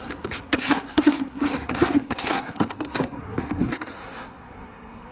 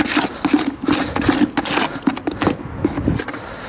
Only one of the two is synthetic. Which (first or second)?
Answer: first